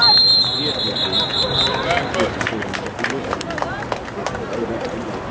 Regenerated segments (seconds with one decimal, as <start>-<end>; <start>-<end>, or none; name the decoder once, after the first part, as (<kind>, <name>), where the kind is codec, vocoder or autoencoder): none